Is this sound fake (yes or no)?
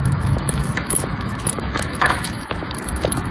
yes